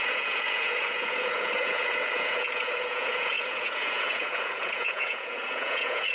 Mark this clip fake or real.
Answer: fake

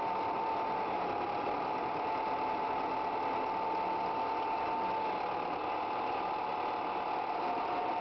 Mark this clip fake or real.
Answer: real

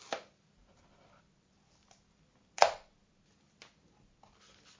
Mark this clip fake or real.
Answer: real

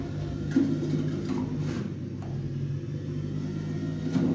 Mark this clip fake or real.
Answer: real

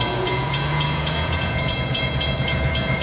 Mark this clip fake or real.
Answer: fake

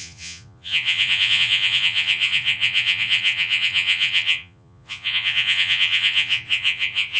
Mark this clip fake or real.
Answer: fake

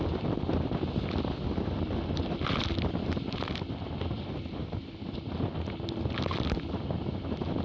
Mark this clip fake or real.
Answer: real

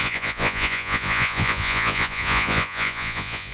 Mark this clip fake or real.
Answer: fake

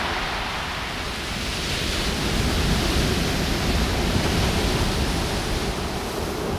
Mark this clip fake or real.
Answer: real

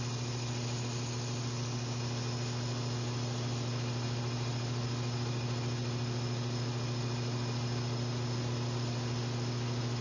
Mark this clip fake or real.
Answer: real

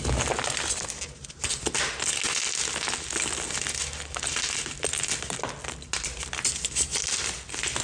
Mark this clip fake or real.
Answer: real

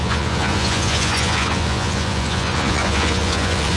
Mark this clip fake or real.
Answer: fake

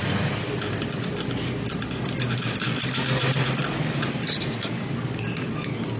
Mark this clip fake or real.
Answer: real